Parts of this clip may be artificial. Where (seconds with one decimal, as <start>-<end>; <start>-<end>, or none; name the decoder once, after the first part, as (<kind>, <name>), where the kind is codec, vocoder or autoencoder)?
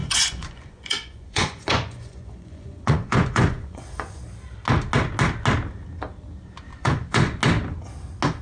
0.0-4.2 (vocoder, Vocos); 6.7-7.4